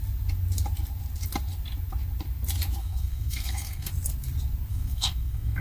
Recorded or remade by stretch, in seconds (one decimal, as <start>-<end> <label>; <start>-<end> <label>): 0.0-2.8 recorded; 2.8-3.9 remade; 3.9-4.7 recorded; 4.7-5.6 remade